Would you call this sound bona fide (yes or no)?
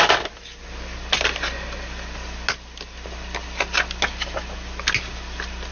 yes